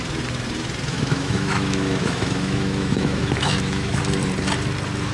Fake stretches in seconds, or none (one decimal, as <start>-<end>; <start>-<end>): 0.9-4.0